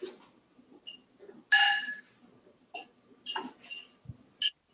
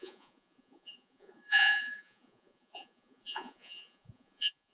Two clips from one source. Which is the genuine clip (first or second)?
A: first